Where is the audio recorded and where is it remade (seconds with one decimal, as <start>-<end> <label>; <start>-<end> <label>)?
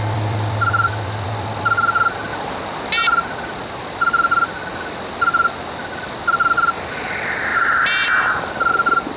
0.0-9.2 recorded